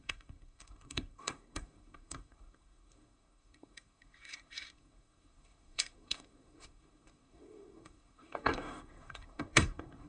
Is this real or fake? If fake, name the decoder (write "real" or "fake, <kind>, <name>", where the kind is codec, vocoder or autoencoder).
fake, codec, SNAC